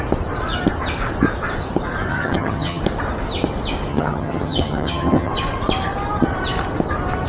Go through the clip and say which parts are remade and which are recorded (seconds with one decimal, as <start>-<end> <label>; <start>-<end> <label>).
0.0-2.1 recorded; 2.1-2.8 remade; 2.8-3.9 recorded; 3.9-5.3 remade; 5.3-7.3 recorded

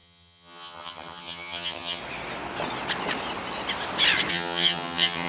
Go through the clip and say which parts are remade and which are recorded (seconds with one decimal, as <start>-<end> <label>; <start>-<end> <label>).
0.0-2.0 remade; 2.0-4.3 recorded; 4.3-5.3 remade

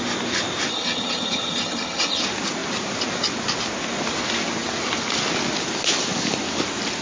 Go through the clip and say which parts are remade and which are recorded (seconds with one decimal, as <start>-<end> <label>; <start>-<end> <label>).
0.0-0.7 recorded; 0.7-2.2 remade; 2.2-7.0 recorded

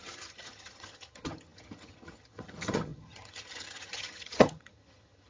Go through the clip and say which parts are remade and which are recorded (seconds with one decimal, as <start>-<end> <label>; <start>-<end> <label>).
0.0-5.3 remade

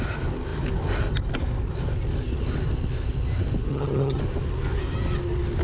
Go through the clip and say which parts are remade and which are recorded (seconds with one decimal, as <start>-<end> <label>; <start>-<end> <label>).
0.0-3.7 recorded; 3.7-4.2 remade; 4.2-5.6 recorded

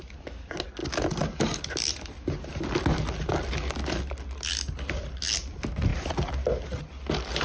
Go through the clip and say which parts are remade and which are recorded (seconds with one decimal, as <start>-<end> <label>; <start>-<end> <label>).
0.0-7.4 recorded